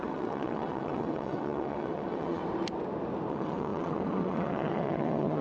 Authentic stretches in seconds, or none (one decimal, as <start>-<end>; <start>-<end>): 2.4-3.3